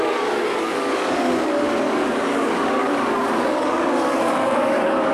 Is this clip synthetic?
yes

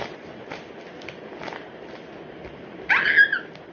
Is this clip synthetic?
no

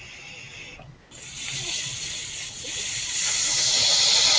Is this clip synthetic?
no